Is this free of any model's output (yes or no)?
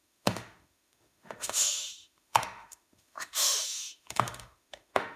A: no